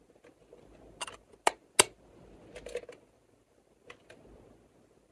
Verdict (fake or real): real